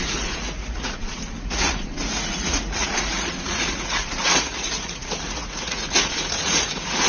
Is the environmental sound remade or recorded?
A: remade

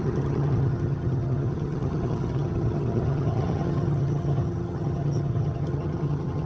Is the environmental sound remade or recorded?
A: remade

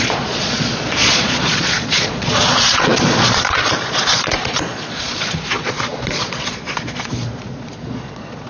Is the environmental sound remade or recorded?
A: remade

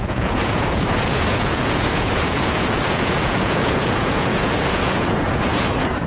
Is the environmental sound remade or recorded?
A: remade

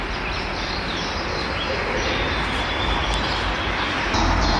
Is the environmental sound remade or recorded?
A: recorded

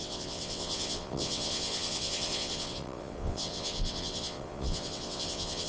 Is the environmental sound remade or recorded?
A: remade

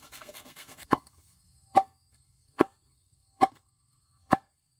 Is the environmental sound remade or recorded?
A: remade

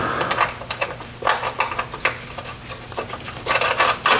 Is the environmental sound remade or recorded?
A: recorded